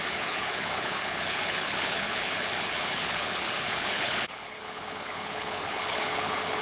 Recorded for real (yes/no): no